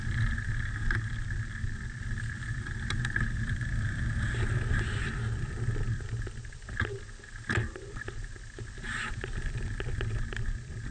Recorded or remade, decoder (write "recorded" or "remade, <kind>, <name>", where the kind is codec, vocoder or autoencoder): recorded